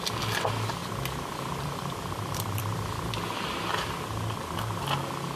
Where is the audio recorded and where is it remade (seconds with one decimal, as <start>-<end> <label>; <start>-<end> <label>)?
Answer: 0.0-0.8 recorded; 0.8-3.1 remade; 3.1-5.4 recorded